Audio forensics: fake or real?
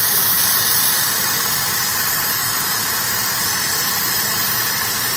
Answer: real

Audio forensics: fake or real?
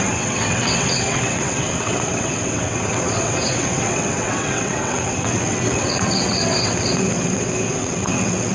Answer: fake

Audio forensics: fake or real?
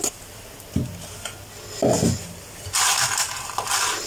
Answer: real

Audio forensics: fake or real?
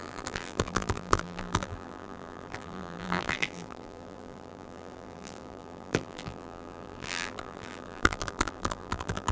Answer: fake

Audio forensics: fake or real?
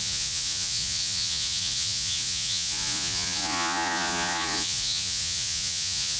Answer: fake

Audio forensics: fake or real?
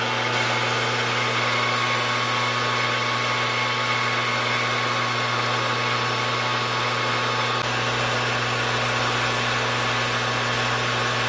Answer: real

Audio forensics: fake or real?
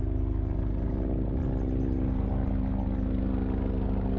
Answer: real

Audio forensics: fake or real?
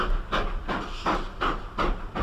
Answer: real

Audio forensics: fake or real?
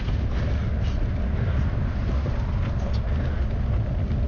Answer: real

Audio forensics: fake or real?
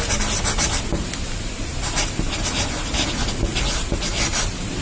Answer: real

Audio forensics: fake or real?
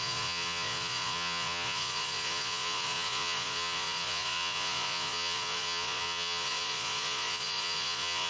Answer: fake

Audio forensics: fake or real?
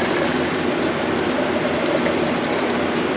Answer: real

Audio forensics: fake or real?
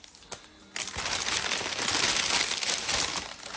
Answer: real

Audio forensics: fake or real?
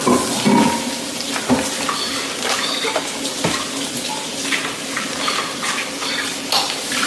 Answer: real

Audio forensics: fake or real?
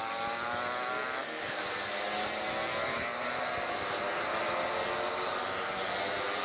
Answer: real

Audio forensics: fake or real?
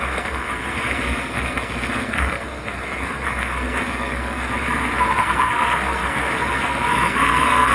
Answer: fake